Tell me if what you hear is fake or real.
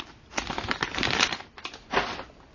real